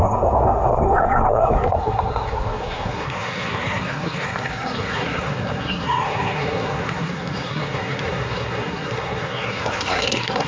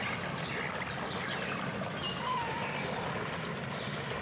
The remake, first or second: first